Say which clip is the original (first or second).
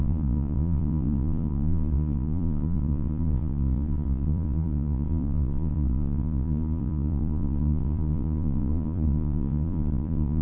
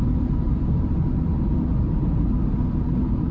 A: second